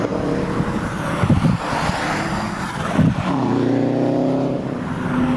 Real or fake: real